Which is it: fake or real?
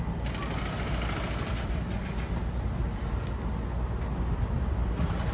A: real